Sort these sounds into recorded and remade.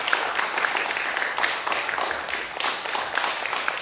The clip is recorded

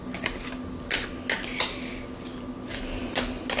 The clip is recorded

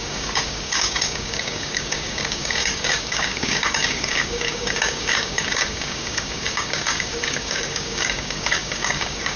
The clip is remade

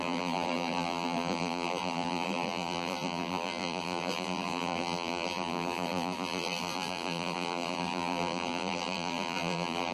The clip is remade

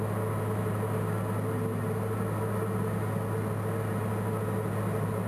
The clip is recorded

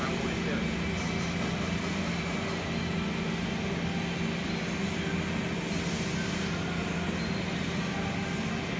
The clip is recorded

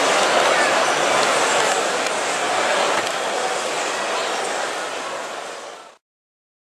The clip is recorded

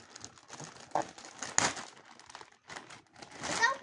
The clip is recorded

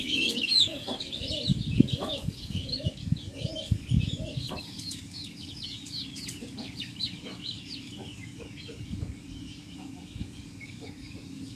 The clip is remade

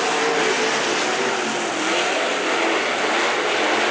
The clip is recorded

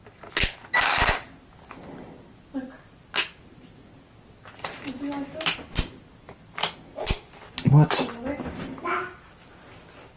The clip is recorded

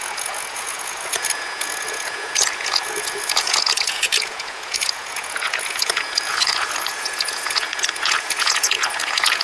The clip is remade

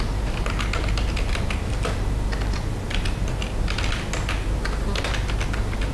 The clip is recorded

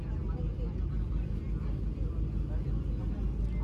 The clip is recorded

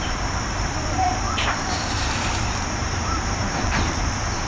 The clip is remade